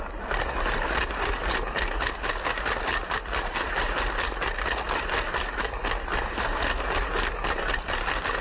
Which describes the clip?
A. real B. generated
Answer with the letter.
A